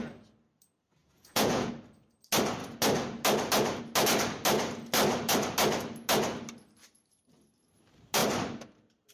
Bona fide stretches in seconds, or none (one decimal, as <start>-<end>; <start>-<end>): 0.0-1.0; 1.7-9.1